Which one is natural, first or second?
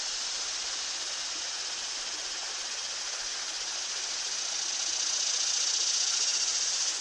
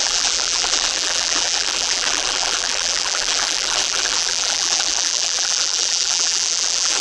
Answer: first